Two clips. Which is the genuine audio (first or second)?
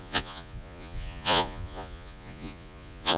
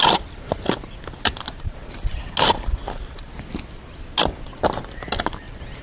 second